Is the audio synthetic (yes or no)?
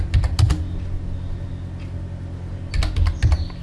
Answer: no